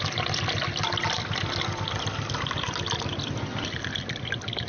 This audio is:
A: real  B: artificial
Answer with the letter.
A